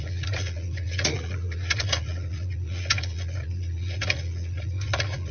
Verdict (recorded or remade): remade